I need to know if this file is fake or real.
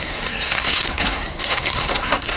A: fake